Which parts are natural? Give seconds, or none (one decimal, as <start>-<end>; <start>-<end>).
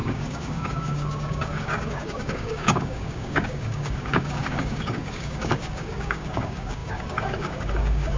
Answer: none